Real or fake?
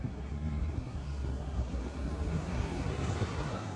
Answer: fake